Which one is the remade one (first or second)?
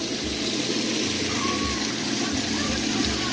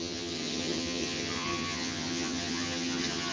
second